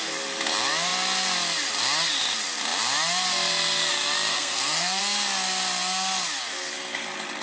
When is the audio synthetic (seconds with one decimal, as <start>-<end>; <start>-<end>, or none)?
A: 4.3-5.0